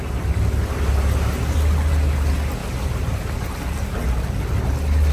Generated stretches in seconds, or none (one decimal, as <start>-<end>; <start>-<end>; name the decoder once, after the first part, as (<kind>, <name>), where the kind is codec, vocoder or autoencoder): none